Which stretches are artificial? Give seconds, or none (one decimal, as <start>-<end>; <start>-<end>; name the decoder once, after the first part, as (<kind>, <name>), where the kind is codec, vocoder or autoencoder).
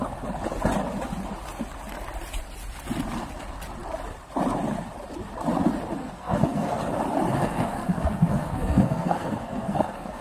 6.0-6.8 (codec, SNAC); 7.4-10.2